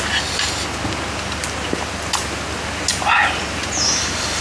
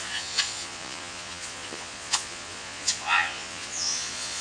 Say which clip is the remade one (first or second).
second